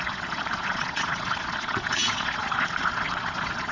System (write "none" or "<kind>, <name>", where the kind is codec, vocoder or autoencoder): vocoder, Vocos